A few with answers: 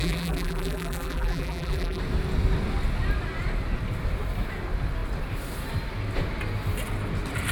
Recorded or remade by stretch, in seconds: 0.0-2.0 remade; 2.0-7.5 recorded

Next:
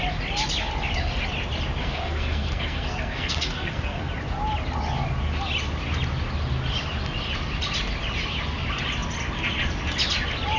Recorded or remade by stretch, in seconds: 0.0-1.8 recorded; 1.8-4.1 remade; 4.1-10.6 recorded